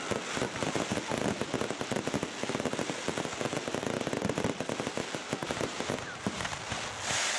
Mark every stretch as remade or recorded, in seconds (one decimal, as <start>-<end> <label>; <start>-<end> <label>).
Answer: 0.0-5.4 recorded; 5.4-6.6 remade; 6.6-7.4 recorded